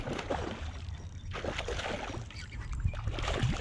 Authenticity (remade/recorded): recorded